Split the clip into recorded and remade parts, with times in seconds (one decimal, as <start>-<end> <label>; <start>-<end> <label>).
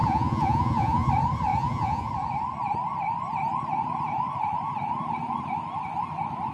0.0-1.1 remade; 1.1-1.5 recorded; 1.5-2.1 remade; 2.1-6.5 recorded